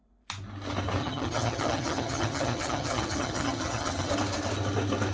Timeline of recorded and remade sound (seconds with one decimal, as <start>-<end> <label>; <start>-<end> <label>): 0.0-1.0 recorded; 1.0-4.1 remade; 4.1-5.1 recorded

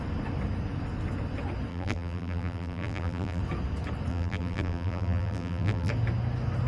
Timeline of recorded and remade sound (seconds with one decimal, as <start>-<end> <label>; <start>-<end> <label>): 0.0-1.7 recorded; 1.7-3.4 remade; 3.4-4.1 recorded; 4.1-5.9 remade; 5.9-6.7 recorded

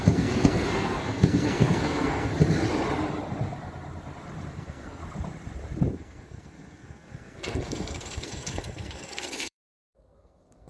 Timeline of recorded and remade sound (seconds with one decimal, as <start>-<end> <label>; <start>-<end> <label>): 0.0-2.3 remade; 2.3-4.5 recorded; 4.5-5.0 remade; 5.0-5.9 recorded; 5.9-10.7 remade

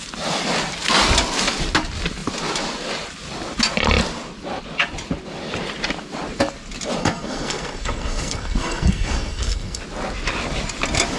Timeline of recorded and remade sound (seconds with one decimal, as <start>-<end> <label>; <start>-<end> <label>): 0.0-7.0 recorded; 7.0-9.8 remade; 9.8-11.2 recorded